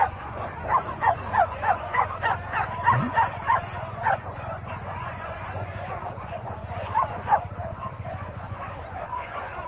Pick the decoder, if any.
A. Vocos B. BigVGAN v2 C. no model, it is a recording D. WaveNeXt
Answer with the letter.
A